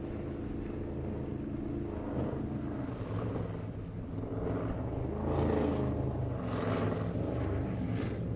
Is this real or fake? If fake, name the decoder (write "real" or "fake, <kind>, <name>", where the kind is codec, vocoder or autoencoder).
real